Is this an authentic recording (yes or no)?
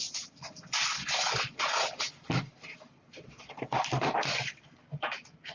no